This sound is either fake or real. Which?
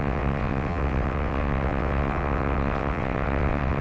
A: fake